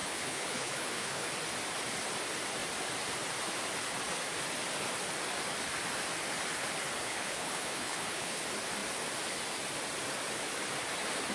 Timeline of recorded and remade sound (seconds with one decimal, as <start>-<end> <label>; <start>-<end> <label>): 0.0-1.3 remade; 1.3-7.0 recorded; 7.0-8.4 remade; 8.4-11.3 recorded